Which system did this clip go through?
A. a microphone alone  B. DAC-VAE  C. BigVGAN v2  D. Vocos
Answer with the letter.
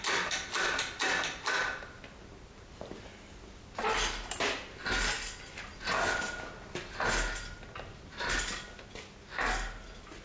A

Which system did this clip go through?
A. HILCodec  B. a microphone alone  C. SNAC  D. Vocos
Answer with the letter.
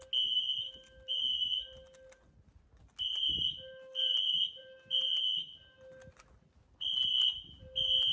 B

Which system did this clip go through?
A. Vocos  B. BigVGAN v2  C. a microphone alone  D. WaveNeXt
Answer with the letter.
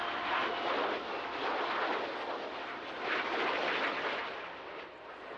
C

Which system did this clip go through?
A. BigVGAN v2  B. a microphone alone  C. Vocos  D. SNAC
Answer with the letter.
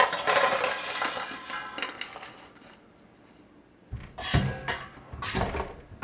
B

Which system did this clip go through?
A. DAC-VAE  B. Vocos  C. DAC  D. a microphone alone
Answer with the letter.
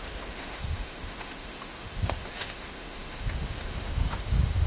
A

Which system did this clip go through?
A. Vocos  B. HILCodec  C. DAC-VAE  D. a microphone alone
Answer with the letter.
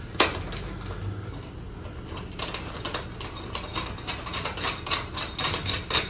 D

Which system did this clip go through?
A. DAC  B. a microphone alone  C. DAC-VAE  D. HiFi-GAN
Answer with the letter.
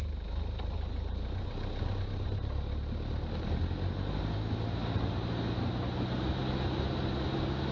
B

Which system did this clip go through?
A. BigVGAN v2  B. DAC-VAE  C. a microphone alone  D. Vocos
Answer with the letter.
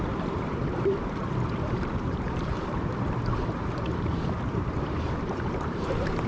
A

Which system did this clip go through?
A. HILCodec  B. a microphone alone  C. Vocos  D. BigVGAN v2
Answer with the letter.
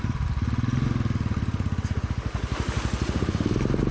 B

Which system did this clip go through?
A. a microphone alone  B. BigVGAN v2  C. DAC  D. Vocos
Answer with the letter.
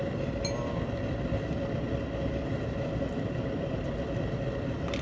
A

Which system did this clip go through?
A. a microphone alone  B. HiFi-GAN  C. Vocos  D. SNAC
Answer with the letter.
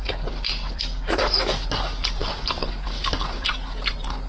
A